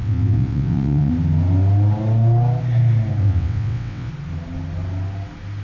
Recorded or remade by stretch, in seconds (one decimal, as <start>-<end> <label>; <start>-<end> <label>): 0.0-1.1 remade; 1.1-3.2 recorded; 3.2-4.1 remade; 4.1-5.6 recorded